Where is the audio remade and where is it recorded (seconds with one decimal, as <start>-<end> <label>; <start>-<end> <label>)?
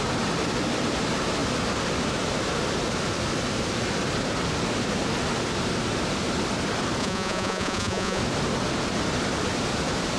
0.0-7.0 recorded; 7.0-8.2 remade; 8.2-10.2 recorded